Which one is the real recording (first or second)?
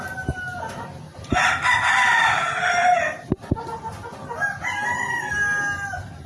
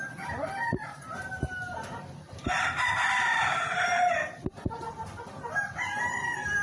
first